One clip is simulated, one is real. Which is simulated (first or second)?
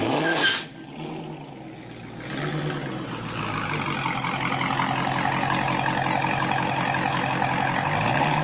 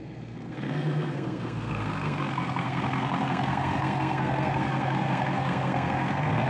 second